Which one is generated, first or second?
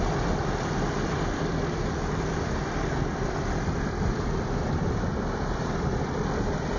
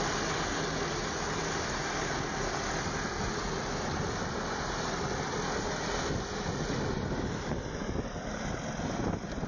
first